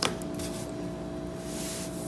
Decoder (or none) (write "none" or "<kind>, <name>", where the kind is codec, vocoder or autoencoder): none